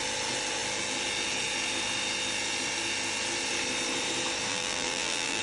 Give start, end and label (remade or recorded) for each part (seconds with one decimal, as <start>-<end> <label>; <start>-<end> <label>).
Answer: 0.0-4.5 recorded; 4.5-5.4 remade